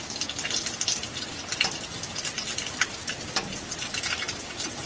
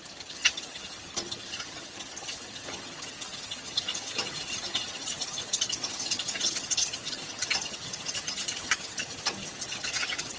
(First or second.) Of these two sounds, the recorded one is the first